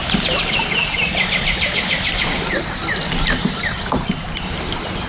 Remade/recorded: recorded